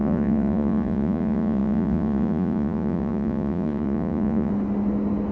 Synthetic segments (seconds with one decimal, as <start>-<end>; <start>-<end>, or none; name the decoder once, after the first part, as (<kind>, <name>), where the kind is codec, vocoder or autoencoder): 0.0-4.5 (vocoder, Vocos)